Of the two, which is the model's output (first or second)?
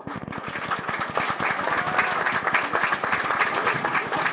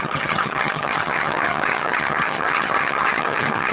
second